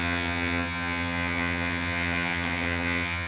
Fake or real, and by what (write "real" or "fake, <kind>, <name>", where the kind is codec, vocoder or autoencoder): fake, vocoder, HiFi-GAN